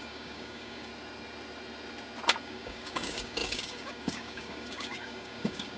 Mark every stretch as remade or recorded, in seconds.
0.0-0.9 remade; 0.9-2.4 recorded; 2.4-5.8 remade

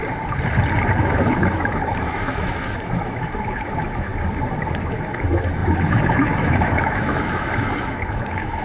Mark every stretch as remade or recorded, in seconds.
0.0-1.0 recorded; 1.0-4.1 remade; 4.1-4.9 recorded; 4.9-8.6 remade

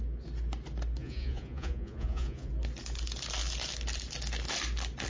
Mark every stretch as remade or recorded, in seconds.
0.0-1.0 recorded; 1.0-2.5 remade; 2.5-5.1 recorded

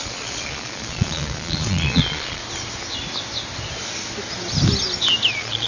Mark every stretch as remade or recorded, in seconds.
0.0-2.4 remade; 2.4-5.3 recorded; 5.3-5.7 remade